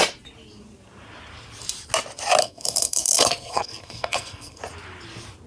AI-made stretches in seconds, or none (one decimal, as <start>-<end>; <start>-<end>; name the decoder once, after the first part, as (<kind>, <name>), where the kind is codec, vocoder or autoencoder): 2.4-4.6 (codec, SNAC)